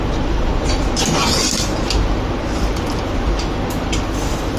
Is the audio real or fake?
real